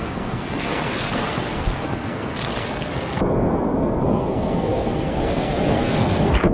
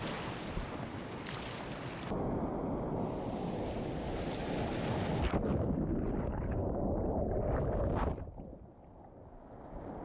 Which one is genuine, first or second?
second